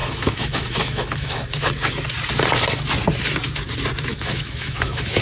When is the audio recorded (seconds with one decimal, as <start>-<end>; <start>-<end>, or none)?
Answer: 1.7-4.1